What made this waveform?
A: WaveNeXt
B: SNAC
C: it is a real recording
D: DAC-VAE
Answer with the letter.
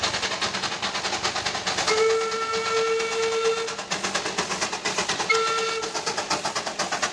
C